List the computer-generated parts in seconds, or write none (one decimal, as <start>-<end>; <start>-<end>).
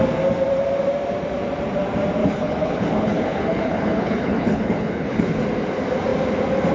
2.2-5.4